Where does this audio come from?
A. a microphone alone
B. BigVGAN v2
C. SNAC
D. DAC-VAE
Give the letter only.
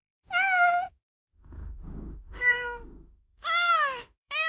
D